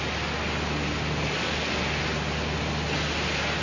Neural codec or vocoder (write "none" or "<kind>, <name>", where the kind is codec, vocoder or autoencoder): none